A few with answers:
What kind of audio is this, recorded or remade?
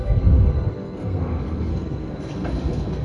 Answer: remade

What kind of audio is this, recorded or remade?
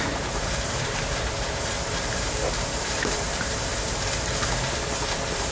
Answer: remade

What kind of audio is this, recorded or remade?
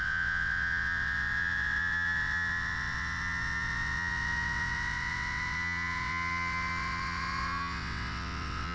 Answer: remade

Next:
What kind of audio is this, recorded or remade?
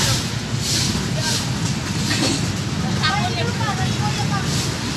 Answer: recorded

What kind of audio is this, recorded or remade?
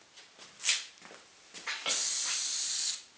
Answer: recorded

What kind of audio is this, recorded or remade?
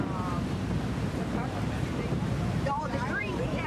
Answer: remade